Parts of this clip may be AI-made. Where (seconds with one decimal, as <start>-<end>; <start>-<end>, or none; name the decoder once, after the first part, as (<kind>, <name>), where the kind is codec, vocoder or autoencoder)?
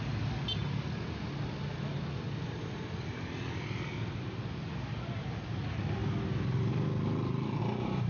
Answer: none